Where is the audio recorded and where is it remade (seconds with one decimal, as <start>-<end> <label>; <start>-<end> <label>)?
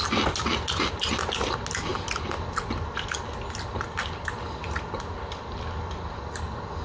0.0-6.8 recorded